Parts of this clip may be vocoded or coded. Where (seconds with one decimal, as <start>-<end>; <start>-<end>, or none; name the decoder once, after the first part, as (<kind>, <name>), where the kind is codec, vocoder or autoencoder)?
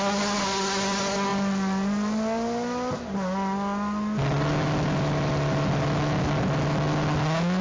none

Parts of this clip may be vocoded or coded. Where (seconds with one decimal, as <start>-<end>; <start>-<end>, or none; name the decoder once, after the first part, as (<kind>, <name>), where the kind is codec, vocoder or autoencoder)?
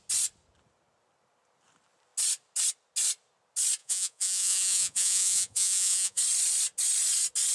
3.8-6.2 (vocoder, Vocos)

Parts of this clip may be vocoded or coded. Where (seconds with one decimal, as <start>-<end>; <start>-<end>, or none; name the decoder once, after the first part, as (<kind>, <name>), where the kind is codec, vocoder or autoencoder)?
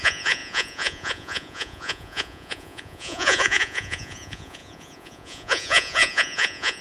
0.0-6.8 (vocoder, Vocos)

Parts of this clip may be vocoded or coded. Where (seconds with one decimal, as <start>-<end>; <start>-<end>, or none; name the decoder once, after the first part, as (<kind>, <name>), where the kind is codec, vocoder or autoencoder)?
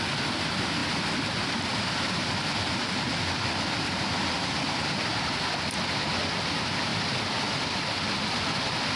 none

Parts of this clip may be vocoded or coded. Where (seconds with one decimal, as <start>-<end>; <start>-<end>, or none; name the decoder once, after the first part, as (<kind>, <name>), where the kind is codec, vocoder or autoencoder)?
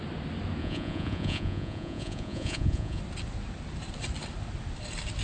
0.6-3.0 (vocoder, Vocos)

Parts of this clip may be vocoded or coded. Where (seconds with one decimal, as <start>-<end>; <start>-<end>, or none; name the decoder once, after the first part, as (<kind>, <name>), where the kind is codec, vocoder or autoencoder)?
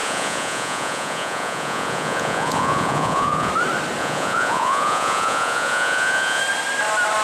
0.0-3.5 (vocoder, Vocos); 4.0-6.4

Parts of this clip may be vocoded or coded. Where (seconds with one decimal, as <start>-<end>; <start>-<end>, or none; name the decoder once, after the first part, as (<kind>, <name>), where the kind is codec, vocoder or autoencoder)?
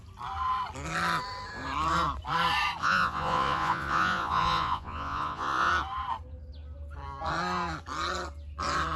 2.8-5.7 (vocoder, Vocos)